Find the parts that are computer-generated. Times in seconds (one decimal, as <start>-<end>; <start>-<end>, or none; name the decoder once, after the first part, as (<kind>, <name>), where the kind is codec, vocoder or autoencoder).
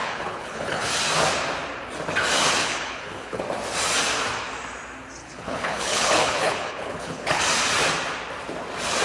0.0-0.9 (codec, HILCodec); 2.6-3.4; 5.2-7.4